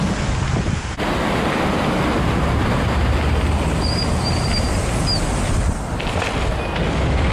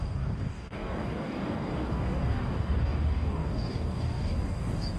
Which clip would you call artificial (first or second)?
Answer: second